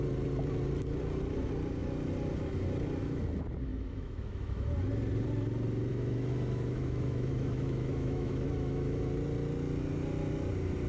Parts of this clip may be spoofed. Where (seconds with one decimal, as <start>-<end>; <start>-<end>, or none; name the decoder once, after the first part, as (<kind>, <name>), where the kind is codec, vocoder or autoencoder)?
3.7-4.7 (autoencoder, DAC-VAE); 5.9-9.0